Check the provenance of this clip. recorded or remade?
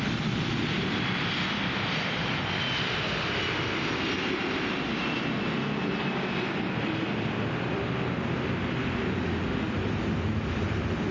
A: recorded